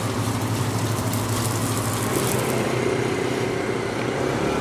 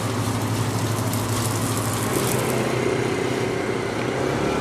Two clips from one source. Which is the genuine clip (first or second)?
second